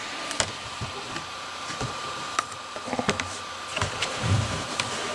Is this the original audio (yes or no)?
no